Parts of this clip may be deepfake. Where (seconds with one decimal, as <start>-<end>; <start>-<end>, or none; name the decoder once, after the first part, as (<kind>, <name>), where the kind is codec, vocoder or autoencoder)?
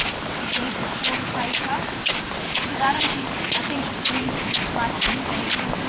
0.5-3.9 (vocoder, BigVGAN v2)